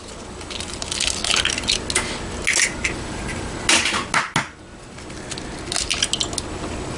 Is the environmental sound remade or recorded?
recorded